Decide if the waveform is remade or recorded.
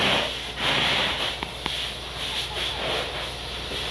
recorded